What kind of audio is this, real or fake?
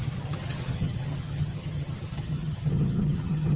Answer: fake